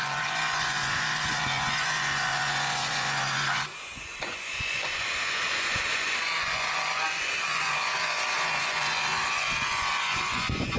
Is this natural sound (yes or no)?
no